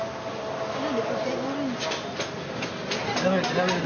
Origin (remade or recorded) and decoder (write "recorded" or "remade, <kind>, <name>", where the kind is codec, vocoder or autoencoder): recorded